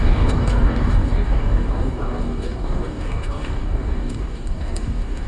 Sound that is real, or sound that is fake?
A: fake